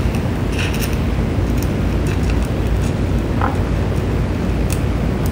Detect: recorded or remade recorded